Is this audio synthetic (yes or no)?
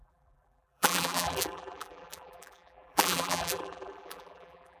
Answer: yes